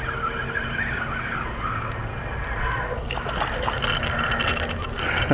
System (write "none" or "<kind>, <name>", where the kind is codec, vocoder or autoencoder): none